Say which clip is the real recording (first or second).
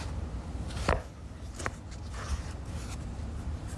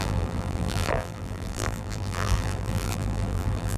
first